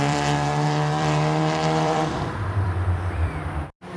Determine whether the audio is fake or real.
fake